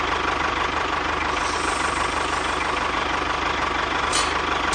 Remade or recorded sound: recorded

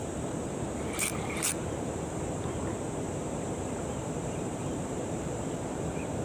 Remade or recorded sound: remade